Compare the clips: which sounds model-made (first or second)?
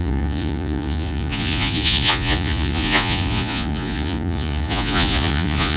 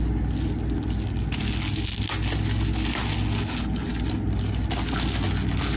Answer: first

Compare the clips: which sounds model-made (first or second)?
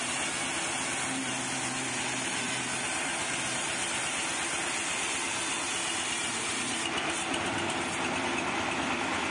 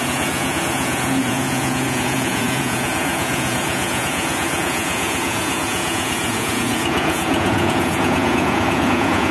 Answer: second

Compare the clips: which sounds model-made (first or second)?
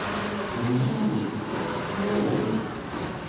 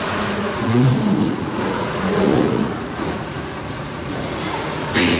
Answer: second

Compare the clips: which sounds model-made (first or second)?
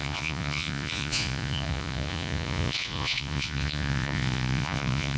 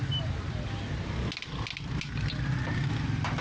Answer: first